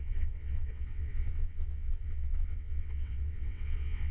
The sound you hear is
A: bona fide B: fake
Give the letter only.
B